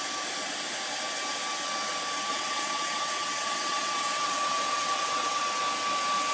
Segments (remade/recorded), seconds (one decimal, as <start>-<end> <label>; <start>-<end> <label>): 0.0-2.3 recorded; 2.3-5.4 remade; 5.4-6.3 recorded